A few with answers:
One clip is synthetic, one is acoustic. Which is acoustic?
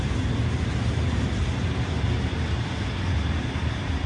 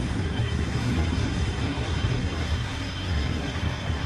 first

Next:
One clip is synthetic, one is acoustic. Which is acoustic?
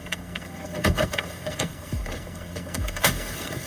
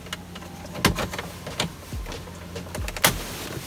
second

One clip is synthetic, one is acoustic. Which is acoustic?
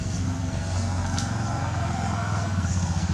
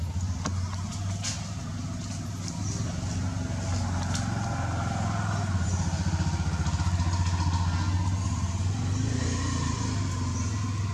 second